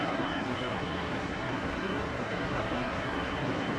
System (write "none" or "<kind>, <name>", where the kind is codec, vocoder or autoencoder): codec, SNAC